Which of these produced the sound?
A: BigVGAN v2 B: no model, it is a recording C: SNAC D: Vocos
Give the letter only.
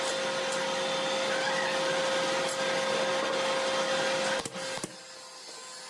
B